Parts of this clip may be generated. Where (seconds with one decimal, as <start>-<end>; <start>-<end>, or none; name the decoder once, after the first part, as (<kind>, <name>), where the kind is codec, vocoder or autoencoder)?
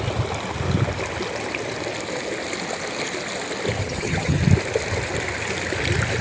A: 3.8-4.4 (vocoder, HiFi-GAN)